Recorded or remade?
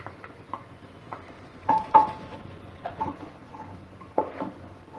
remade